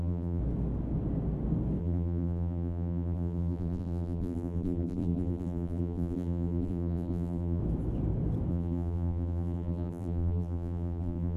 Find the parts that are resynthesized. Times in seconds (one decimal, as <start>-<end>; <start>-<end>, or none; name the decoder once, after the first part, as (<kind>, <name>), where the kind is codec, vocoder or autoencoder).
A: 0.0-0.4 (vocoder, BigVGAN v2); 1.8-7.6; 8.5-11.4